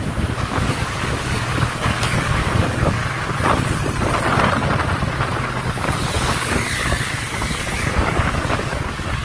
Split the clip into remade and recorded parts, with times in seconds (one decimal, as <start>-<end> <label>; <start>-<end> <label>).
0.0-3.0 remade; 3.0-5.7 recorded; 5.7-9.2 remade